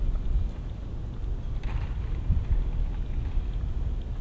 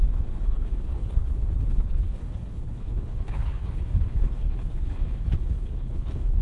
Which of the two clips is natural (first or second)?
first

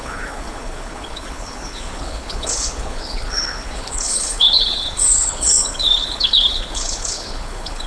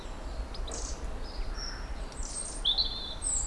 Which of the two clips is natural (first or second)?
second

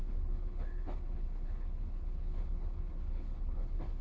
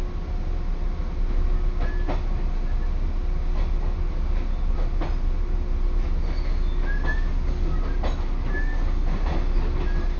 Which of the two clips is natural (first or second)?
second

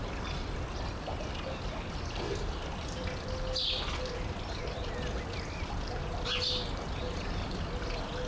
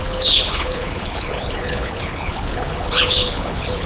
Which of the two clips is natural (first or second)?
first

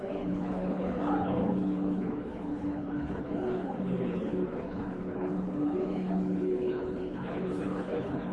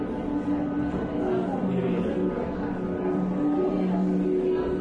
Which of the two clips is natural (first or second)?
second